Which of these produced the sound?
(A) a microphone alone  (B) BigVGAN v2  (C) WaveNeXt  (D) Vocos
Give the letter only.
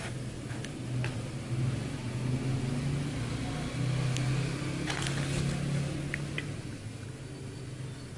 A